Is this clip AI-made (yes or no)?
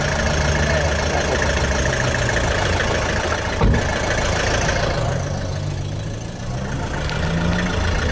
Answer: no